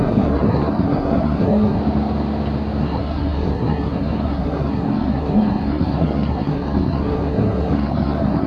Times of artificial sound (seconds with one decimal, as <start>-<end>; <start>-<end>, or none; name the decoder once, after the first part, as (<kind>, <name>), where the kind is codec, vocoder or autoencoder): 0.0-1.8 (codec, SNAC); 2.8-8.5

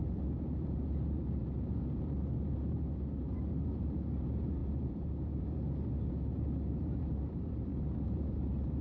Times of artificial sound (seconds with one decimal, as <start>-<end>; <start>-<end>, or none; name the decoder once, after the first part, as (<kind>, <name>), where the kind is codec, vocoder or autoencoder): 0.0-8.8 (vocoder, BigVGAN v2)

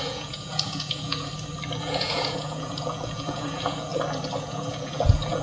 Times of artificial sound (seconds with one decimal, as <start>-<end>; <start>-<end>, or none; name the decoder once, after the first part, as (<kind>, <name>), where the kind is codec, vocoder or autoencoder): 0.0-1.3 (vocoder, Vocos); 1.8-3.9; 4.4-5.4

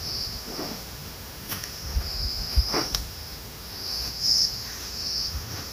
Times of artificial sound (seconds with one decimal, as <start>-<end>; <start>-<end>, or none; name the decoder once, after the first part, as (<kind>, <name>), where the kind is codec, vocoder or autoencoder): 0.0-5.7 (autoencoder, DAC-VAE)

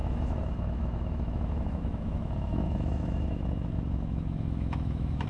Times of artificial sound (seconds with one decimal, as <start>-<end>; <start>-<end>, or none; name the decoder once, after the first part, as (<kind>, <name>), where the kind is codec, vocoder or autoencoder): 0.0-5.3 (autoencoder, DAC-VAE)